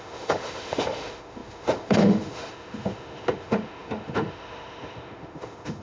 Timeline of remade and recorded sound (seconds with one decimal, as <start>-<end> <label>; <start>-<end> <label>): 0.0-5.8 remade